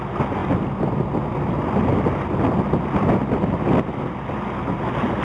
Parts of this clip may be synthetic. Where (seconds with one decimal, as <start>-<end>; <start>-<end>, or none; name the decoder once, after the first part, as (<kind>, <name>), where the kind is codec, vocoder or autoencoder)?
0.4-1.4 (vocoder, BigVGAN v2)